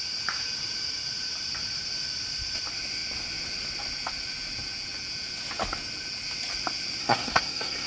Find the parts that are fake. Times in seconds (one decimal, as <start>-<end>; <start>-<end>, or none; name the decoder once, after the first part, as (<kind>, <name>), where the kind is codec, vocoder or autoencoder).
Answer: 7.0-7.9 (codec, SNAC)